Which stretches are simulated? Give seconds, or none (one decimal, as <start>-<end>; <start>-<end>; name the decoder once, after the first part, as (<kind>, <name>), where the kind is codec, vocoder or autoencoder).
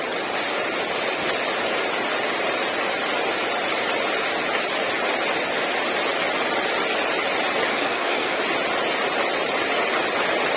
7.7-8.4 (codec, SNAC)